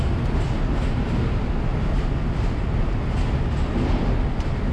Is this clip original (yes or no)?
yes